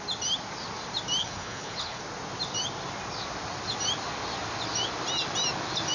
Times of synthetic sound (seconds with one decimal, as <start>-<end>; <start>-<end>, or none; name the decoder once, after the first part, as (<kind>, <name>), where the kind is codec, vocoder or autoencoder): 1.2-2.0 (codec, HILCodec)